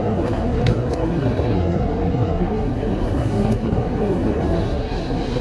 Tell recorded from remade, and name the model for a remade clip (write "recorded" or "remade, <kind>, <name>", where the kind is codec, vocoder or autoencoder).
remade, codec, SNAC